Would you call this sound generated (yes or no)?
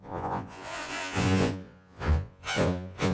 yes